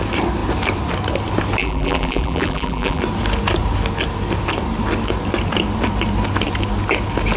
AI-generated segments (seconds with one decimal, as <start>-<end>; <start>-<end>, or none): 1.6-3.0